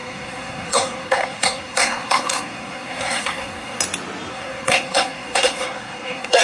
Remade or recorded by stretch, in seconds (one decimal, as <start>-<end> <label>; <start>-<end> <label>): 0.0-3.8 remade; 3.8-4.3 recorded; 4.3-6.4 remade